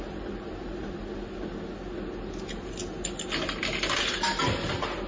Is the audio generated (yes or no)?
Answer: no